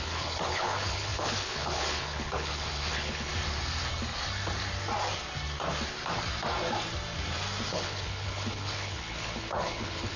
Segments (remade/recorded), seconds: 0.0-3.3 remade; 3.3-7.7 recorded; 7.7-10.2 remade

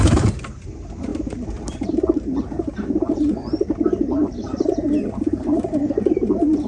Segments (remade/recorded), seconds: 0.0-6.7 remade

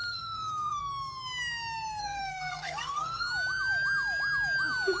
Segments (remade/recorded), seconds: 0.0-0.8 remade; 0.8-2.0 recorded; 2.0-3.3 remade; 3.3-5.0 recorded

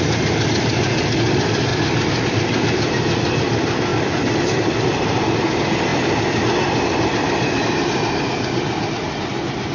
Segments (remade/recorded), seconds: 0.0-9.7 recorded

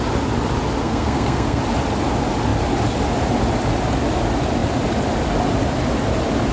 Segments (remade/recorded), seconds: 0.0-0.8 recorded; 0.8-1.6 remade; 1.6-6.5 recorded

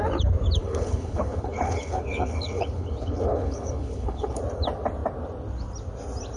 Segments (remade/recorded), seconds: 0.0-0.6 recorded; 0.6-4.4 remade; 4.4-6.4 recorded

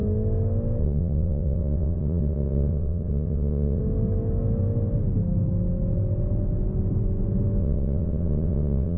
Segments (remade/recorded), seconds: 0.0-0.8 recorded; 0.8-3.8 remade; 3.8-7.6 recorded; 7.6-9.0 remade

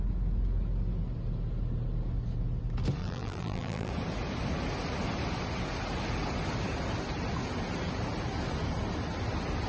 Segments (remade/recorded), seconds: 0.0-3.0 recorded; 3.0-3.9 remade; 3.9-9.7 recorded